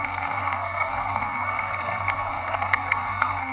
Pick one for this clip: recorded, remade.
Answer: remade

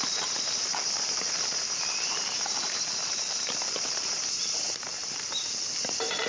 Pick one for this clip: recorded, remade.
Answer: remade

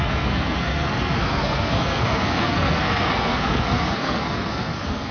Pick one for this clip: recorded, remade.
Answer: remade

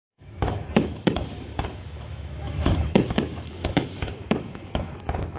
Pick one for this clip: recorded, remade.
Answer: remade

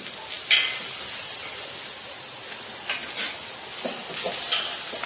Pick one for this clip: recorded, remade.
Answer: recorded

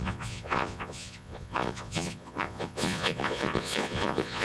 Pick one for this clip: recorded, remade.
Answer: remade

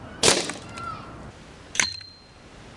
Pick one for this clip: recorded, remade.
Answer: recorded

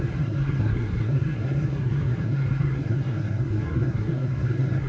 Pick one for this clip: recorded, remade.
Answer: remade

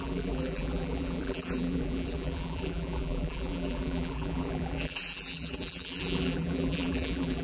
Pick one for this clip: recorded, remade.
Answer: remade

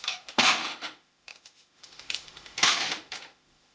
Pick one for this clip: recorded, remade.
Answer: remade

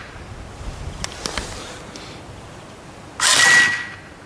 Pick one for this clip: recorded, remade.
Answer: recorded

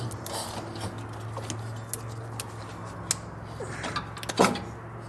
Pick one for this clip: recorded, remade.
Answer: recorded